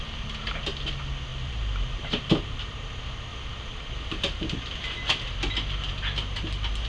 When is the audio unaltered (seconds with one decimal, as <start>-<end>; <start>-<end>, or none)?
0.0-1.3; 2.5-3.3; 4.0-6.9